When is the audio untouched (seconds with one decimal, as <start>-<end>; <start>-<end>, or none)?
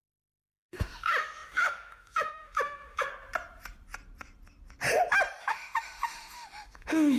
3.1-5.4